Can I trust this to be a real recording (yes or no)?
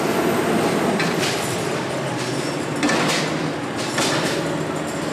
yes